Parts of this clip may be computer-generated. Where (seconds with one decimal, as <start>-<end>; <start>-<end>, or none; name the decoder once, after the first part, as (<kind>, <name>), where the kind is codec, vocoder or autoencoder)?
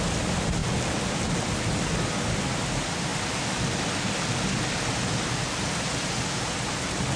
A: none